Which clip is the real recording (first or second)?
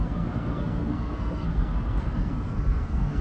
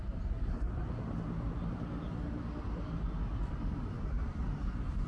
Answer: second